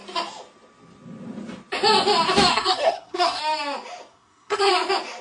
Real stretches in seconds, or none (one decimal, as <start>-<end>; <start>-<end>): 0.0-2.5; 3.4-4.1; 4.7-5.2